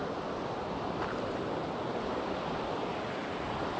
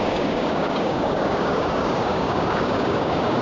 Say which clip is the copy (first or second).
second